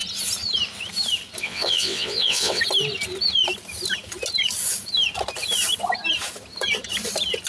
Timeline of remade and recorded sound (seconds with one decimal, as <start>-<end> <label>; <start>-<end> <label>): 0.0-1.4 recorded; 1.4-2.6 remade; 2.6-7.5 recorded